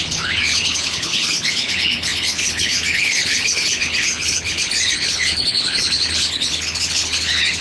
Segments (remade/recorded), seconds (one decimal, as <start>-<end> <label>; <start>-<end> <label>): 0.0-7.6 remade